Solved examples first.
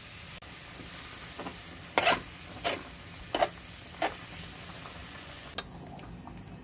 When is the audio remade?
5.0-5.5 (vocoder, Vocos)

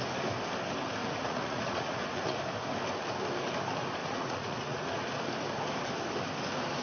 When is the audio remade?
1.0-2.4 (vocoder, Vocos); 4.0-5.1